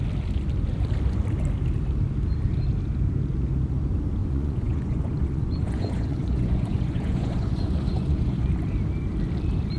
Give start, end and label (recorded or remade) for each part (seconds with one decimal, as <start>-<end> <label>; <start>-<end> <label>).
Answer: 0.0-4.2 recorded; 4.2-8.5 remade; 8.5-9.8 recorded